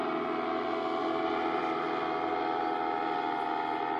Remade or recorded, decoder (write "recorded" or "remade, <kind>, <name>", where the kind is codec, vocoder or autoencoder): recorded